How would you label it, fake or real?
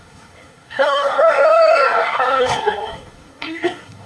fake